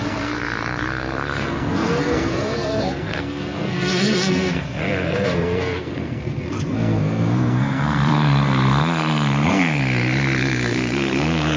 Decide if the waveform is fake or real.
fake